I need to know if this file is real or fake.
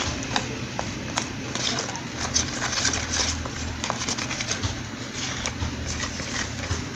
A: fake